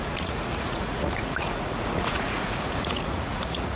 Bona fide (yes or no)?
no